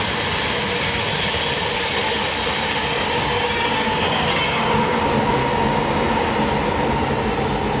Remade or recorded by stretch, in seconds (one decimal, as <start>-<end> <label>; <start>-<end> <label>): 0.0-2.9 recorded; 2.9-5.0 remade; 5.0-5.4 recorded; 5.4-6.3 remade; 6.3-7.8 recorded